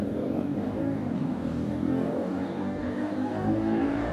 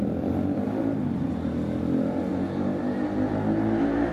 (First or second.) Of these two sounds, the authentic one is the second